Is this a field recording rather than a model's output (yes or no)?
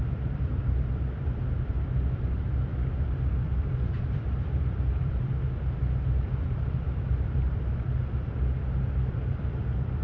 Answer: no